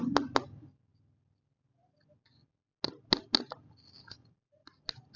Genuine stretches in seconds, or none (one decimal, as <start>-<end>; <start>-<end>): 0.0-5.2